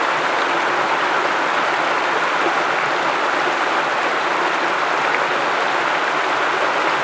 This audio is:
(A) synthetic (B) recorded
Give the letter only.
B